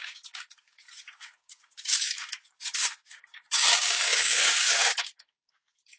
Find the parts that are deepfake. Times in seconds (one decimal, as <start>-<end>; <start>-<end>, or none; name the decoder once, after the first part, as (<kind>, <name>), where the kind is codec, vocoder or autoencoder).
0.0-6.0 (codec, DAC)